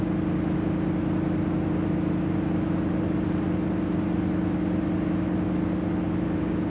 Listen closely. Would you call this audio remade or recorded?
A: recorded